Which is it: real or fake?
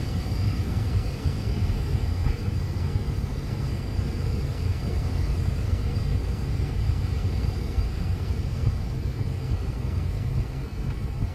fake